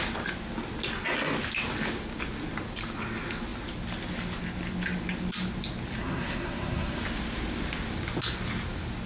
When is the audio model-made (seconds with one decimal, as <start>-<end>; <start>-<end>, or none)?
6.0-7.0